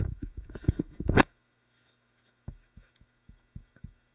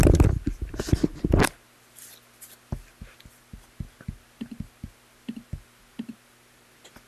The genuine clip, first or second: second